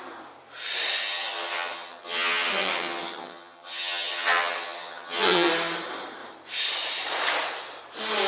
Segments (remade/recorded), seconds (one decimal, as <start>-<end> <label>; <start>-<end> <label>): 0.0-1.0 recorded; 1.0-5.5 remade; 5.5-8.3 recorded